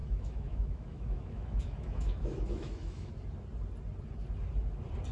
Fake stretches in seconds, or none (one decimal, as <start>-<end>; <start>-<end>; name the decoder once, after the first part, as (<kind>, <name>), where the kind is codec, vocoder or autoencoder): 0.0-3.1 (autoencoder, DAC-VAE)